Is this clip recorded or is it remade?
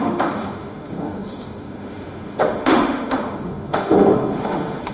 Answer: remade